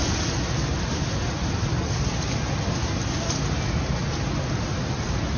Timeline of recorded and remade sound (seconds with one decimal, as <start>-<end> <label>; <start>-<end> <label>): 0.0-5.4 recorded